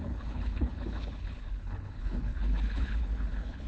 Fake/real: fake